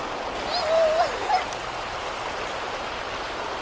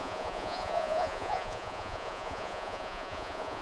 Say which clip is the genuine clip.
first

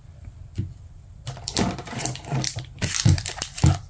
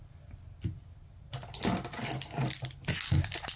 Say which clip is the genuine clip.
second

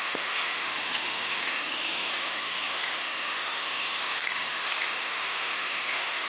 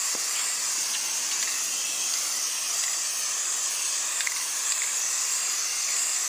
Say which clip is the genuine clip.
second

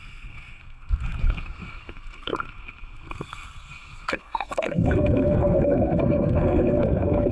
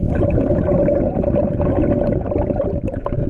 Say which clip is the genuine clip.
second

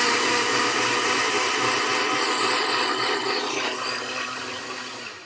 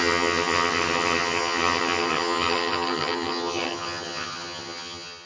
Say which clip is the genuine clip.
first